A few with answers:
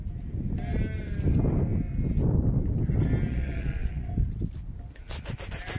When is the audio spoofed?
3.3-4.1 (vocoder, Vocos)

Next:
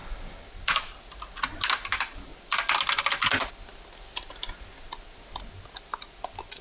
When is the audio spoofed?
none

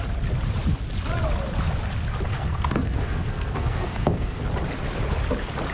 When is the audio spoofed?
2.3-4.4 (codec, SNAC)

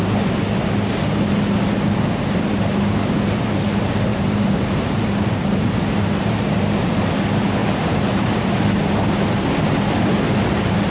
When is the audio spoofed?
4.1-7.1 (vocoder, BigVGAN v2); 7.6-8.5

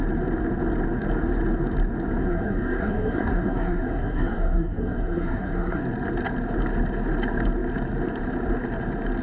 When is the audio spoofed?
2.2-5.8 (codec, SNAC)

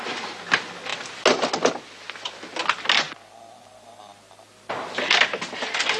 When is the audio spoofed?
none

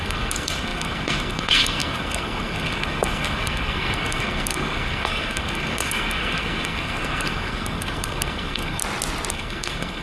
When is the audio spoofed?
0.0-8.8 (codec, SNAC); 9.3-10.0